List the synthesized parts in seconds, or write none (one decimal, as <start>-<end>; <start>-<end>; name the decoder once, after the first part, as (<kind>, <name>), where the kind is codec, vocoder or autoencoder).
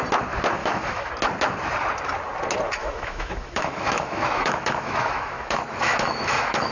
0.6-1.1 (autoencoder, DAC-VAE); 2.8-6.7